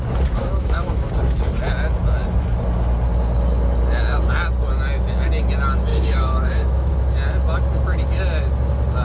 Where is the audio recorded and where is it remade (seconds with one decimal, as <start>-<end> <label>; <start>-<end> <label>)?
0.0-0.4 recorded; 0.4-1.1 remade; 1.1-5.9 recorded; 5.9-6.9 remade; 6.9-9.0 recorded